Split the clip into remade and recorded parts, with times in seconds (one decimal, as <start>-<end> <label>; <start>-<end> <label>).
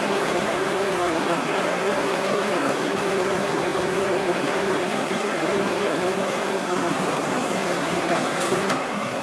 0.0-9.2 remade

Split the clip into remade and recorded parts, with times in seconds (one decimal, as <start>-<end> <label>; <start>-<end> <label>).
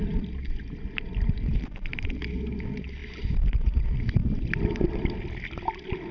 0.0-6.1 recorded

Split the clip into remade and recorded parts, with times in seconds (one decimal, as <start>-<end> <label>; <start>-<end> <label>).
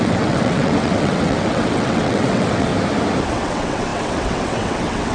0.0-2.7 remade; 2.7-3.3 recorded; 3.3-5.1 remade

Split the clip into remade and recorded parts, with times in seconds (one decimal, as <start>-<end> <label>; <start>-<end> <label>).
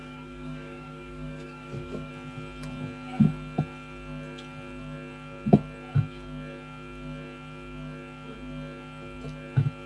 0.0-2.1 remade; 2.1-9.9 recorded